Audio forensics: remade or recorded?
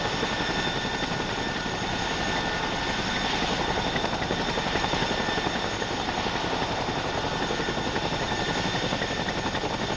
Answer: recorded